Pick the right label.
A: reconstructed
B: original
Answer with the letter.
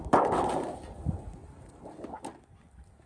B